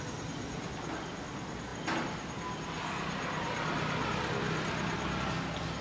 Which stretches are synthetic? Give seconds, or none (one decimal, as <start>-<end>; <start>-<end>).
none